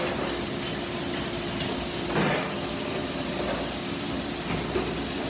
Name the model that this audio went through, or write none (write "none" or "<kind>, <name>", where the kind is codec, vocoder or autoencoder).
none